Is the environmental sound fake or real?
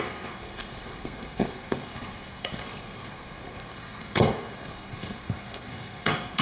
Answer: fake